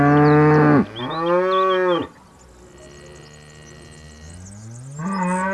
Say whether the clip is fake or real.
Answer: real